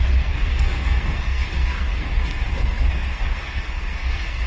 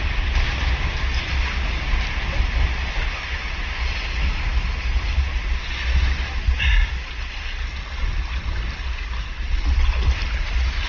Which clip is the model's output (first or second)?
first